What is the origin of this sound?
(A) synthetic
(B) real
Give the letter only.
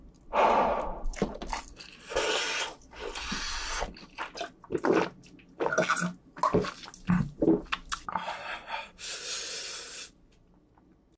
B